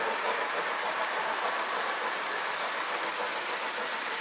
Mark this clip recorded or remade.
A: recorded